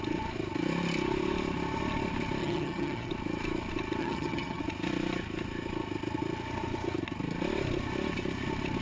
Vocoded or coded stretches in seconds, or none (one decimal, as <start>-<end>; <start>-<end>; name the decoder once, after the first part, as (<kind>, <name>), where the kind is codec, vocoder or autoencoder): 2.4-3.1 (vocoder, HiFi-GAN); 4.0-4.6